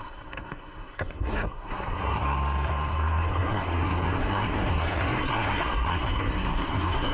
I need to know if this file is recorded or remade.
remade